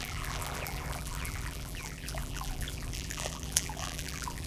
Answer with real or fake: fake